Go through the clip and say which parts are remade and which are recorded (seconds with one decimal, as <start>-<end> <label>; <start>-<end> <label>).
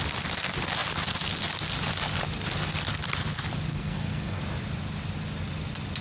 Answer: 0.0-3.7 recorded; 3.7-4.4 remade; 4.4-6.0 recorded